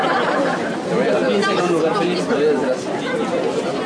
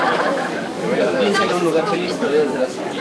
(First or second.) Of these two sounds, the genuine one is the first